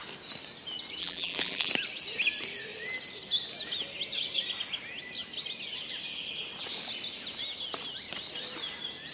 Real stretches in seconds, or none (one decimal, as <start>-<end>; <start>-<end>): 0.0-1.0; 1.7-9.1